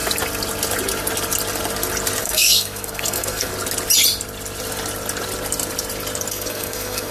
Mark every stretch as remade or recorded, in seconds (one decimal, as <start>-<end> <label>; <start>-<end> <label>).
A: 0.0-2.2 recorded; 2.2-3.5 remade; 3.5-6.3 recorded; 6.3-7.1 remade